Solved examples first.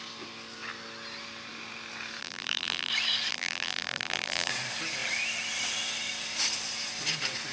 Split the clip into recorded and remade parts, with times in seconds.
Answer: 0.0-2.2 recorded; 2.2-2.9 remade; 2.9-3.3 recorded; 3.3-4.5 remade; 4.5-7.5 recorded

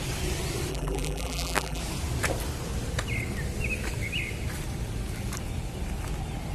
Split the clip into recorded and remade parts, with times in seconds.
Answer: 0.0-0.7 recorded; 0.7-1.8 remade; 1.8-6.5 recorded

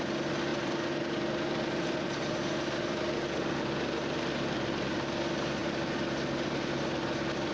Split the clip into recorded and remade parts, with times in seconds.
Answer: 0.0-7.5 recorded

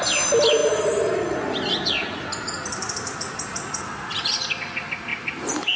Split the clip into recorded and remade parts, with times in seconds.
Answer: 0.0-5.1 recorded; 5.1-5.8 remade

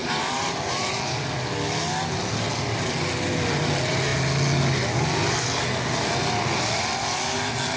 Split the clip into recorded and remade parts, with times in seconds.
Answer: 0.0-0.9 remade; 0.9-7.8 recorded

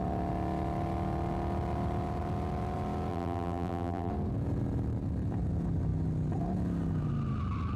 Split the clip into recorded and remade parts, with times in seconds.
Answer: 0.0-3.1 recorded; 3.1-4.1 remade; 4.1-7.8 recorded

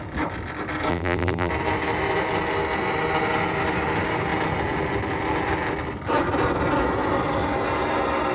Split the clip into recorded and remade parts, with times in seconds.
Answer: 0.0-0.9 recorded; 0.9-1.5 remade; 1.5-8.3 recorded

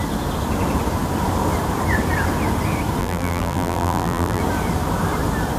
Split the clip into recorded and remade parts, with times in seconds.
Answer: 0.0-3.0 recorded; 3.0-4.4 remade; 4.4-5.6 recorded